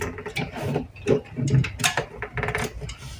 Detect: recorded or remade remade